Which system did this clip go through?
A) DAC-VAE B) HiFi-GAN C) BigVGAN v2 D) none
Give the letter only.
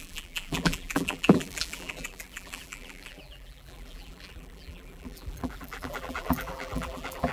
C